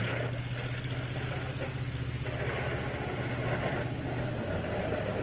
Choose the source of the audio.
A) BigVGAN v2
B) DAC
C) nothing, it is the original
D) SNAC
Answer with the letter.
C